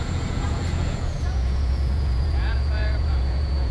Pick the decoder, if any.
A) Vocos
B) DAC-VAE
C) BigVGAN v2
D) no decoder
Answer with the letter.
A